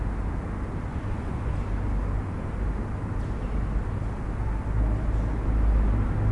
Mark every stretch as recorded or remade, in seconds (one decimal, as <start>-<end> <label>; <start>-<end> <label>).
0.0-0.9 recorded; 0.9-1.5 remade; 1.5-6.3 recorded